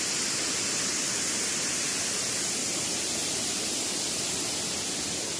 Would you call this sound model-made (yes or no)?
no